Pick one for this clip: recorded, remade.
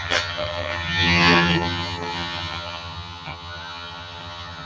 remade